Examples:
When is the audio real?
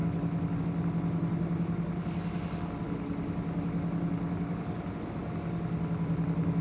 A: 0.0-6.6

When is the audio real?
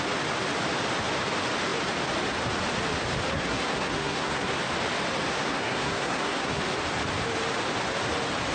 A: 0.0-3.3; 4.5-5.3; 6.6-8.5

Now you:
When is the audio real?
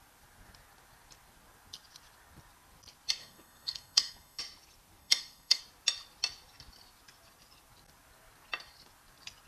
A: 0.0-3.2; 4.4-5.0; 5.6-9.5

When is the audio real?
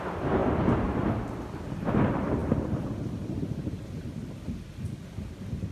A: 0.0-5.7